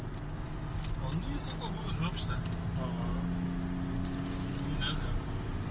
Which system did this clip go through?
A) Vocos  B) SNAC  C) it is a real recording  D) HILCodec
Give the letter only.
C